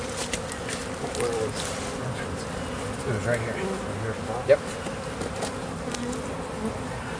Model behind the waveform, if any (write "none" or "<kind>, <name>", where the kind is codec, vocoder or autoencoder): none